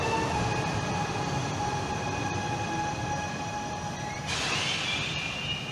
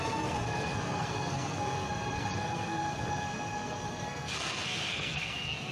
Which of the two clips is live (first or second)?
first